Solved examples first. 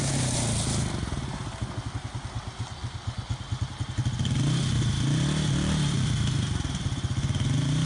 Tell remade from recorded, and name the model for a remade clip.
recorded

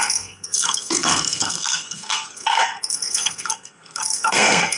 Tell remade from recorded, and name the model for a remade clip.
remade, codec, SNAC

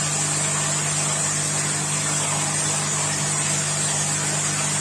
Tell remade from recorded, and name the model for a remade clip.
recorded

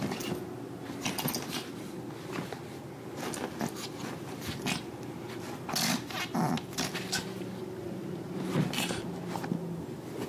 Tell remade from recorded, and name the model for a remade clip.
recorded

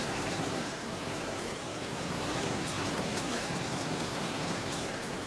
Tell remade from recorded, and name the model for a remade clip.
remade, codec, SNAC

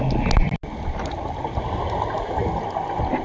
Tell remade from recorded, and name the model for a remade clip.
recorded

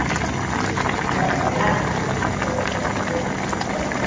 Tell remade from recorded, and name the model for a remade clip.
recorded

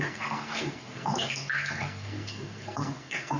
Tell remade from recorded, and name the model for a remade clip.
remade, codec, SNAC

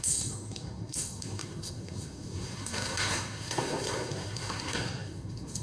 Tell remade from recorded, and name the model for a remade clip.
remade, codec, SNAC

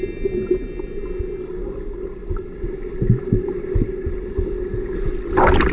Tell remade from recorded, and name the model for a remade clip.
recorded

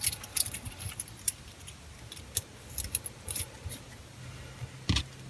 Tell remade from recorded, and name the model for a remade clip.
recorded